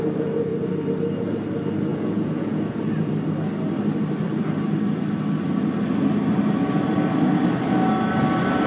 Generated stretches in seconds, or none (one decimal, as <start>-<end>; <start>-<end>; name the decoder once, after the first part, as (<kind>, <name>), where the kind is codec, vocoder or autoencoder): 1.9-3.1 (vocoder, Vocos)